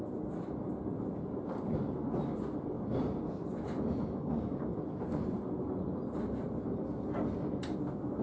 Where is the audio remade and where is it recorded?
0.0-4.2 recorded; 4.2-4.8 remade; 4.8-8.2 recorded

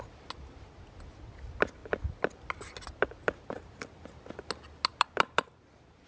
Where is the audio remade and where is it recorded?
0.0-6.1 recorded